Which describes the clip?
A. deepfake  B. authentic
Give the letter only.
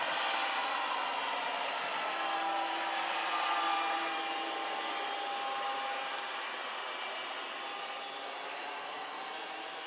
B